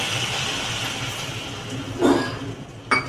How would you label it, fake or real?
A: real